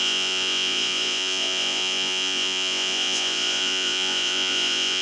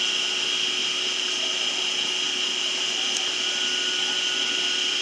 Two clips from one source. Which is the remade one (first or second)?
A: first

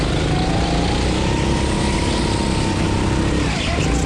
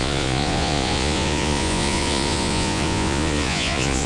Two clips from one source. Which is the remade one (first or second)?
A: second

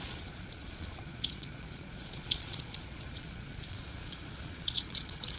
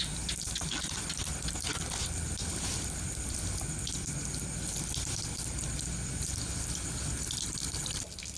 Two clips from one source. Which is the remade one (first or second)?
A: first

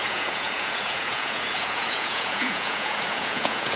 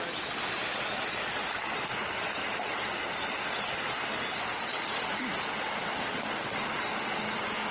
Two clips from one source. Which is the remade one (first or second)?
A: first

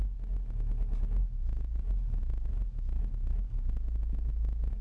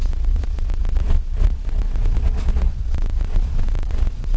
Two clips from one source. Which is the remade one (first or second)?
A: second